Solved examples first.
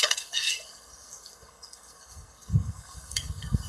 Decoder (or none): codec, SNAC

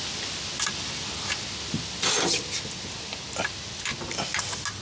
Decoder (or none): none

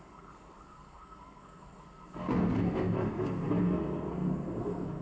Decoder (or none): codec, SNAC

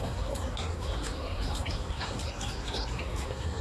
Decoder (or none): codec, SNAC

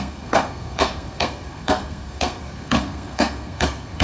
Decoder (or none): codec, SNAC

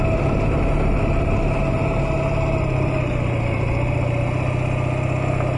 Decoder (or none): none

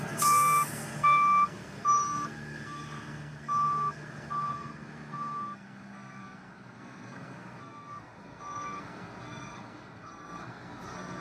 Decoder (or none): codec, SNAC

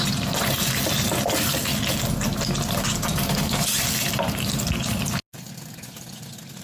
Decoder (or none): none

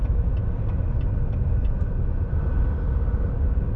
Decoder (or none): none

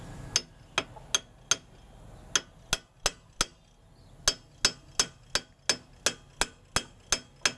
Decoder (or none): none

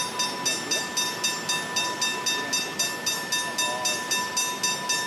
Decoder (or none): none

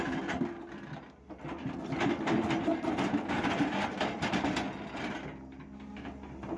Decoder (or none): none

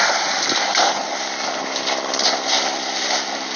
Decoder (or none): none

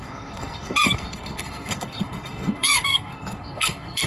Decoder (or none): codec, SNAC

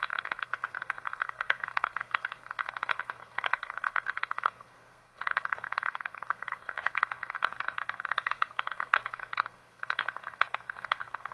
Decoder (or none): codec, SNAC